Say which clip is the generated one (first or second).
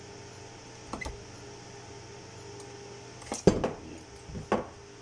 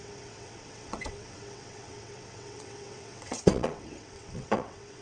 second